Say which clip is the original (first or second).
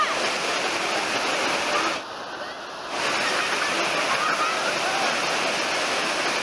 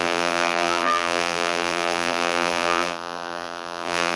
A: first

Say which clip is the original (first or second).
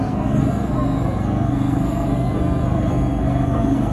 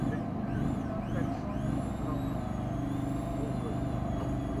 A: second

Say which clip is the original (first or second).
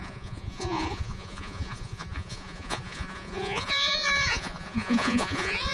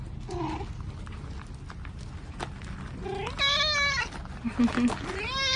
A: second